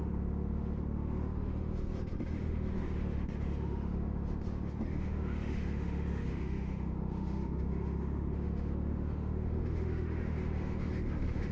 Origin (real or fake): fake